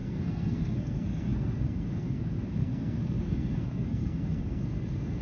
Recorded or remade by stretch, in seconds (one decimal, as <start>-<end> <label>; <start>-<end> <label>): 0.0-5.2 remade

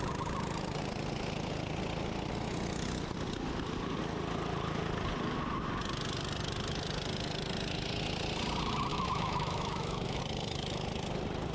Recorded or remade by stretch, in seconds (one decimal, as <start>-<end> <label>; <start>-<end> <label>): 0.0-8.9 recorded; 8.9-10.2 remade; 10.2-11.5 recorded

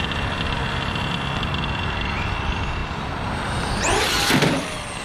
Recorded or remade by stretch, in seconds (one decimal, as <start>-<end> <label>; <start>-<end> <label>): 0.0-5.0 recorded